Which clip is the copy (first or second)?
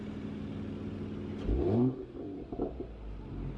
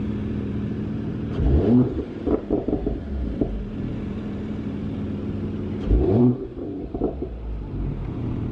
second